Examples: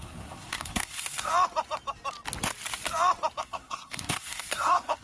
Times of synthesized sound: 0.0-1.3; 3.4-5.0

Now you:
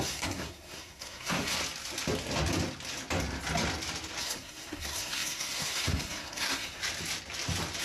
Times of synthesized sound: 0.0-1.6; 4.2-6.8